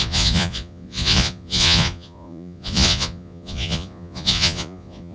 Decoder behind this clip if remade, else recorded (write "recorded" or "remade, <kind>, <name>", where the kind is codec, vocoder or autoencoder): remade, vocoder, Vocos